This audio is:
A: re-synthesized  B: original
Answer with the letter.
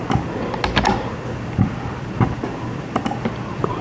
B